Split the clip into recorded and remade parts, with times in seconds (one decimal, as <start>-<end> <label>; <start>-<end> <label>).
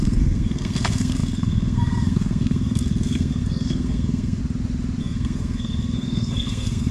0.0-4.4 remade; 4.4-5.0 recorded; 5.0-6.9 remade